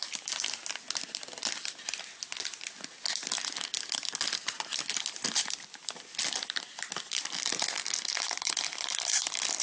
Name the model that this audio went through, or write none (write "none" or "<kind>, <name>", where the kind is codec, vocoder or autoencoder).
vocoder, BigVGAN v2